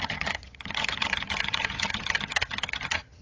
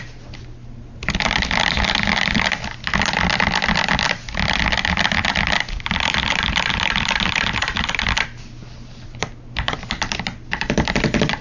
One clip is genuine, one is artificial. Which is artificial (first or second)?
first